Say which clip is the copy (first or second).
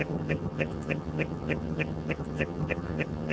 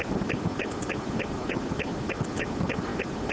first